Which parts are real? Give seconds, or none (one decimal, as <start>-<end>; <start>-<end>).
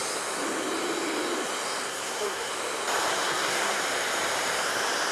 0.0-1.9; 2.5-3.1; 3.8-5.1